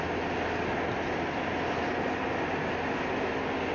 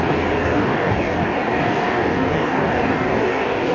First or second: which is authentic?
first